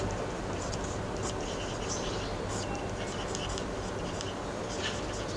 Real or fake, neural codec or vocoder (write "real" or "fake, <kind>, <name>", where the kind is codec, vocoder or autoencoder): real